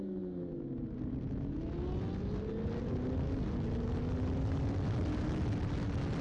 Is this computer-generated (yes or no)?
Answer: no